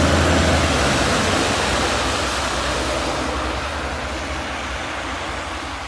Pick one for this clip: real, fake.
real